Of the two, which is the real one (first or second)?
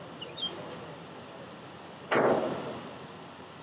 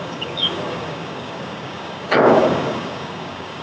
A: first